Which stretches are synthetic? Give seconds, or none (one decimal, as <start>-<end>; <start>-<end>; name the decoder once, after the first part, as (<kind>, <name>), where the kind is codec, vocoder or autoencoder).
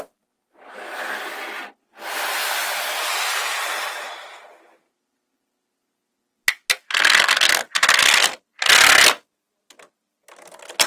2.4-3.4 (vocoder, BigVGAN v2)